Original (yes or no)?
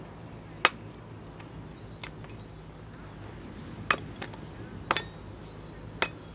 yes